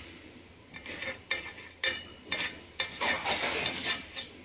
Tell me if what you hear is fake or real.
real